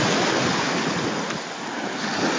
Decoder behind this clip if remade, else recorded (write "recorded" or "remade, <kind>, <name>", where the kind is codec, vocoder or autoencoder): recorded